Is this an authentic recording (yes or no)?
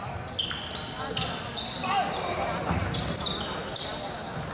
yes